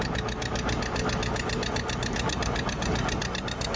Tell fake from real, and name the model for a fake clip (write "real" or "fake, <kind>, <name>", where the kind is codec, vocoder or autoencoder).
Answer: real